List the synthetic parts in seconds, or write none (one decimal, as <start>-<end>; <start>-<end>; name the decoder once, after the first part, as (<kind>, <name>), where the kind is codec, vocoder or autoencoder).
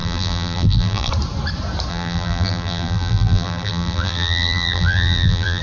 0.0-1.1 (vocoder, BigVGAN v2); 1.9-5.6